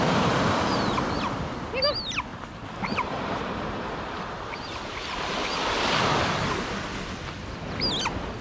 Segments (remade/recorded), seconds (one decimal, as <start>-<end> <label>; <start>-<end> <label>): 0.0-2.3 recorded; 2.3-4.6 remade; 4.6-8.4 recorded

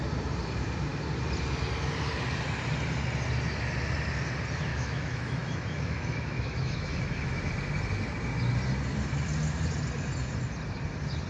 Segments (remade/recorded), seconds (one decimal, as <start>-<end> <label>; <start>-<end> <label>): 0.0-4.7 recorded; 4.7-7.5 remade; 7.5-11.3 recorded

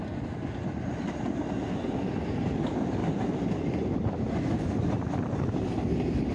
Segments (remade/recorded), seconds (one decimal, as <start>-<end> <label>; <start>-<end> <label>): 0.0-3.0 recorded; 3.0-4.1 remade; 4.1-6.3 recorded

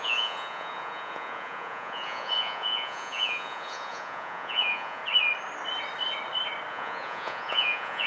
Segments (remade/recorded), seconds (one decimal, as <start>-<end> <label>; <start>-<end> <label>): 0.0-5.0 remade; 5.0-6.7 recorded; 6.7-8.1 remade